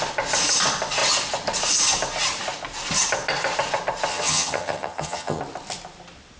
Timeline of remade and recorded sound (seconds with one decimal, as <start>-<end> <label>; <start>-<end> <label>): 0.0-4.1 recorded; 4.1-5.4 remade; 5.4-6.4 recorded